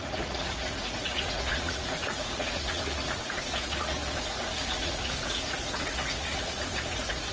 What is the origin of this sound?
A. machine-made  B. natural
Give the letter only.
A